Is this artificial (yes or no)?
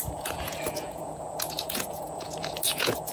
yes